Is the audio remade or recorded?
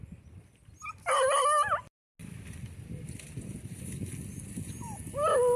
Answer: recorded